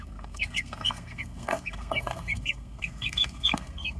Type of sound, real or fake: fake